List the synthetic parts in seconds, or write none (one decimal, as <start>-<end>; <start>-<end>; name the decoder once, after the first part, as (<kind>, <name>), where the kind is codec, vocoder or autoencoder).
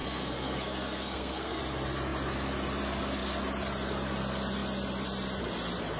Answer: 0.0-1.6 (codec, SNAC)